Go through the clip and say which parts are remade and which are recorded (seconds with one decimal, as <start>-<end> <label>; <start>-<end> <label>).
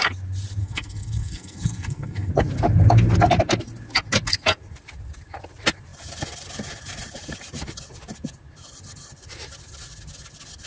0.0-0.6 recorded; 0.6-2.3 remade; 2.3-10.7 recorded